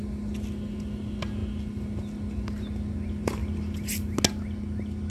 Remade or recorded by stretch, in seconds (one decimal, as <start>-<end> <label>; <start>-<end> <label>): 0.0-5.1 recorded